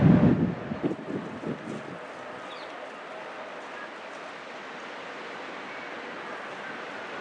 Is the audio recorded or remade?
recorded